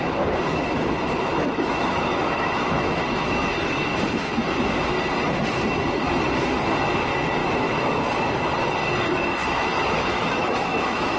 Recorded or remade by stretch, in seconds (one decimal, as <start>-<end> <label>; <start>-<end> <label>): 0.0-1.3 recorded; 1.3-4.3 remade; 4.3-7.4 recorded; 7.4-8.1 remade; 8.1-9.4 recorded; 9.4-11.2 remade